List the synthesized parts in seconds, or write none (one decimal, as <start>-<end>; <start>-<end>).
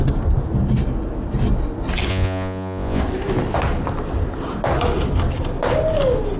2.1-3.0